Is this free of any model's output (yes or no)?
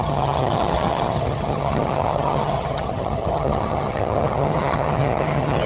no